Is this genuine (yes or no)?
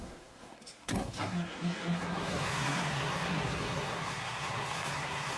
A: no